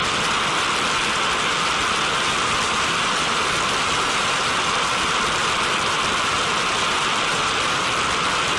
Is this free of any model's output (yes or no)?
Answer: yes